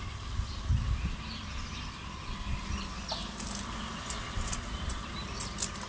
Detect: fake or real real